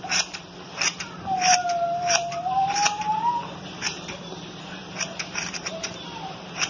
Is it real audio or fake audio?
fake